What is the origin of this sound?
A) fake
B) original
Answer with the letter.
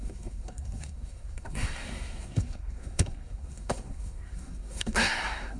A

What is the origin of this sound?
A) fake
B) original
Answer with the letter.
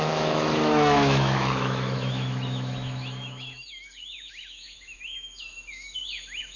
A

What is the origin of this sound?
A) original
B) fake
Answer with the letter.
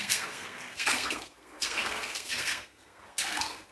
B